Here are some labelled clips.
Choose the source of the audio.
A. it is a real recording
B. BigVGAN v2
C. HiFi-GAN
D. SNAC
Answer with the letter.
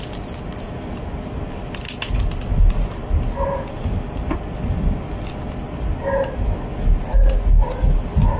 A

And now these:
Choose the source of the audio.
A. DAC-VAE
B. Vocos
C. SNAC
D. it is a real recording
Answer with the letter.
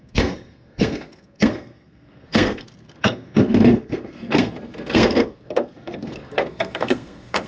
C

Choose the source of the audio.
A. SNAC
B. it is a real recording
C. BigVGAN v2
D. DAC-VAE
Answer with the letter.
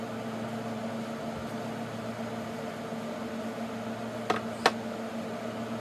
B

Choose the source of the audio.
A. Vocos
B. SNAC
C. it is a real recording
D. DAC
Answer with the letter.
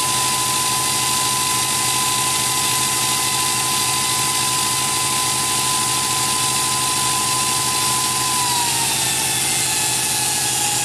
C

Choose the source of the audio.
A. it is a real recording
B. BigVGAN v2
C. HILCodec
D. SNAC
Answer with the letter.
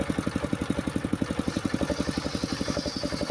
A